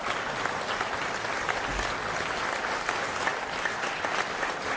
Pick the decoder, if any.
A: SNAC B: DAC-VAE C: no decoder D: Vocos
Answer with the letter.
C